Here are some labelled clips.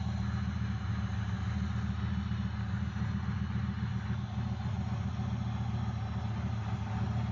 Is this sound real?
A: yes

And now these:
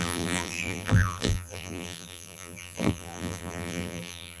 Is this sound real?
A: no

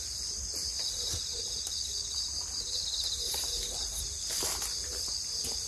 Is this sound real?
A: yes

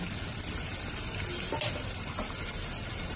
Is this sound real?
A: yes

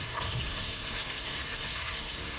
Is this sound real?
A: no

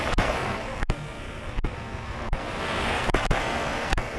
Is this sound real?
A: no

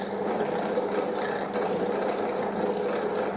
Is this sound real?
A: yes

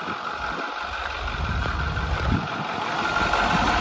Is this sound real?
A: yes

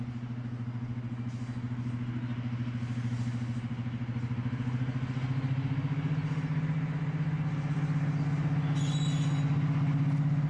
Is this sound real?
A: yes